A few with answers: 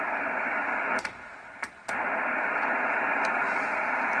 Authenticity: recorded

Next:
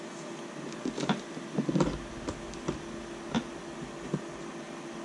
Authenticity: recorded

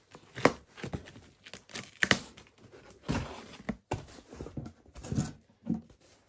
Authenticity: recorded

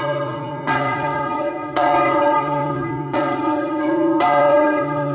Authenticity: remade